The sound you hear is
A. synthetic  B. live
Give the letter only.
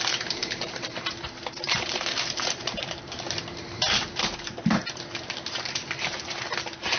A